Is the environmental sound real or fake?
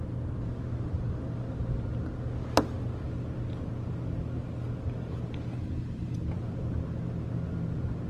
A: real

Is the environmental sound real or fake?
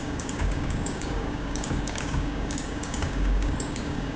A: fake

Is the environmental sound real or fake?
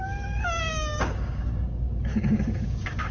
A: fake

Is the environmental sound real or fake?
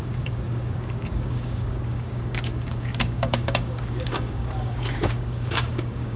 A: fake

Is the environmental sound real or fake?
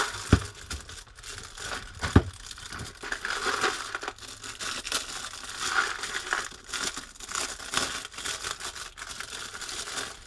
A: real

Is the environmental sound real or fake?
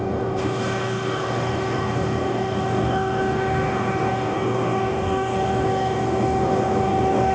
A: fake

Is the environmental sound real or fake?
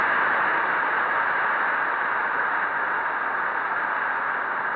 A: real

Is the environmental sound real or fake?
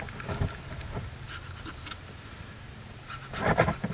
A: real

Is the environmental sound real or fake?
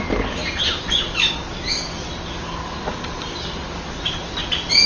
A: real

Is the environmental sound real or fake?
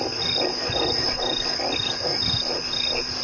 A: real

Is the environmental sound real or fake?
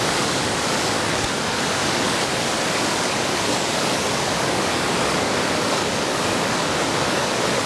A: fake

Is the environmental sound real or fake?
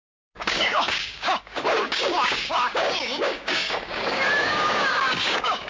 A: fake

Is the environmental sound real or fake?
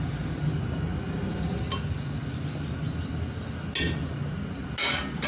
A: real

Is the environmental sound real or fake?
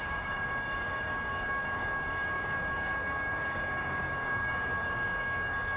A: fake